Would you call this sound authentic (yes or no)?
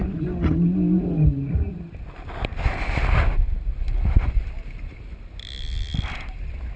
yes